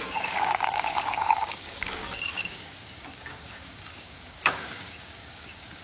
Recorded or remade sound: remade